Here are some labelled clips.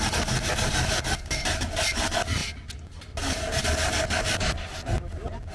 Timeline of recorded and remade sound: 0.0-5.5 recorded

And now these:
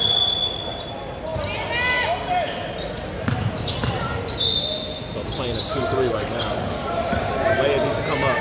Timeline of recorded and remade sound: 0.0-5.7 recorded; 5.7-6.8 remade; 6.8-8.4 recorded

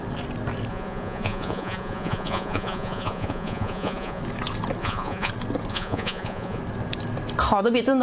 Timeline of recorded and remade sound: 0.0-0.7 recorded; 0.7-4.2 remade; 4.2-4.8 recorded; 4.8-5.3 remade; 5.3-5.7 recorded; 5.7-6.6 remade; 6.6-8.0 recorded